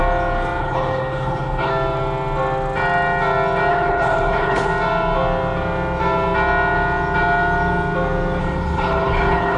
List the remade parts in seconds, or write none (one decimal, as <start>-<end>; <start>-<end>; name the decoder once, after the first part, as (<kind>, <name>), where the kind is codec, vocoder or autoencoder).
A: 0.6-1.7 (codec, HILCodec); 3.7-4.7; 8.4-9.6